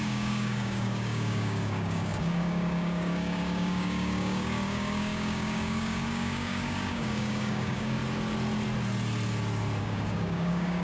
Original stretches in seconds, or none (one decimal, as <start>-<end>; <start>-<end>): 8.0-9.8